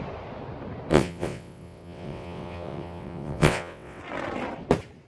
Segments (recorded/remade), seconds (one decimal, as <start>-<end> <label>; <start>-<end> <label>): 0.0-0.9 recorded; 0.9-4.0 remade; 4.0-5.1 recorded